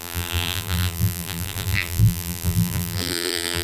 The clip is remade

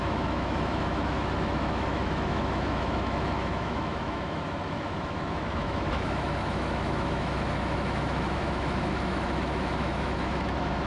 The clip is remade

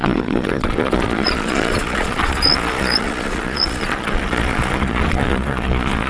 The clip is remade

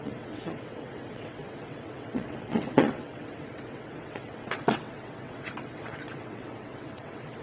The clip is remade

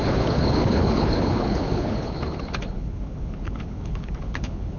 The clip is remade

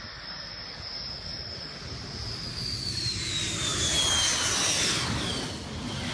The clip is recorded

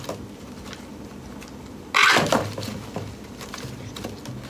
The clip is recorded